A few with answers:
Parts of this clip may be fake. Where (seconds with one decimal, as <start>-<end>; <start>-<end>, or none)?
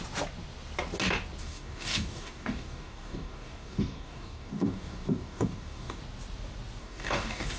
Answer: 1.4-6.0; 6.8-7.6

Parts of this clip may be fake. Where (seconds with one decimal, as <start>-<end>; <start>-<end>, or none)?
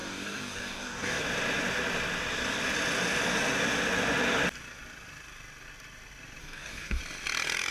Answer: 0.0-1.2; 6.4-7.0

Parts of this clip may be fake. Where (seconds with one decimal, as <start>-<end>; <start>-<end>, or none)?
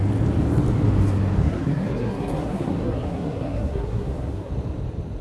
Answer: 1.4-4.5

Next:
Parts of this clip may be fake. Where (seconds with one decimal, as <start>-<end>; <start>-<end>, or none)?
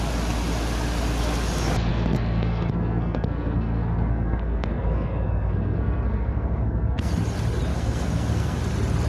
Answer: 1.9-7.1; 7.7-8.6